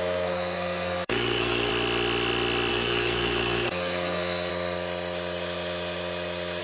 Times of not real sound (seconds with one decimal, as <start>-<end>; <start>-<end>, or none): 0.0-1.7; 2.7-4.5